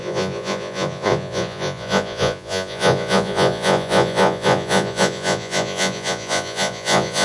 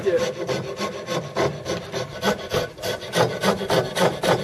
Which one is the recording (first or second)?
second